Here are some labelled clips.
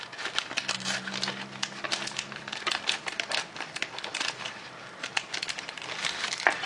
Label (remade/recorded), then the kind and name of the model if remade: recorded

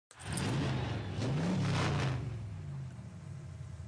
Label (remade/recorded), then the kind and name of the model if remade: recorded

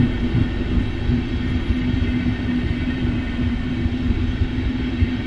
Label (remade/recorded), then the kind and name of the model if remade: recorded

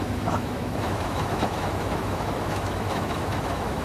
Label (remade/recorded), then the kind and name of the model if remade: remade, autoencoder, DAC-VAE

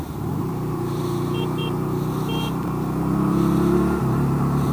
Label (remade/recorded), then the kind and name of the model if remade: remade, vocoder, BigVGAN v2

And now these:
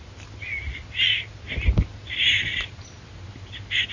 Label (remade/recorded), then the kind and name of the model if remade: recorded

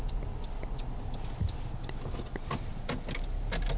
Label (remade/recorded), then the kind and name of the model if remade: recorded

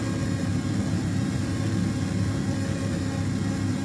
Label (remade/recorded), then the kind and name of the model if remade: recorded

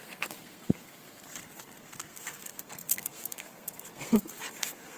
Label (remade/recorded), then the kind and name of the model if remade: remade, codec, SNAC